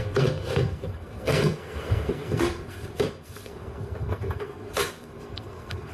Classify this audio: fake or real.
fake